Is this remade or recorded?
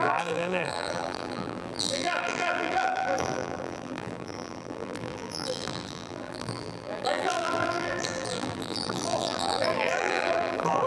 remade